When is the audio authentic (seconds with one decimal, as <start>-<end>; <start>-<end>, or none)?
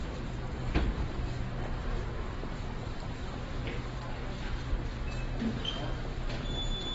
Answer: 3.5-6.9